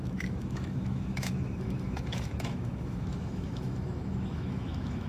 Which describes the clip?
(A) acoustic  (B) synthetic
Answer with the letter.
B